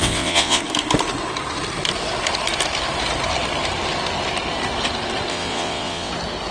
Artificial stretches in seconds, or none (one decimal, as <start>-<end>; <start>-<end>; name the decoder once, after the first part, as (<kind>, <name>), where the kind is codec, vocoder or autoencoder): 0.0-0.6 (vocoder, WaveNeXt); 5.3-6.1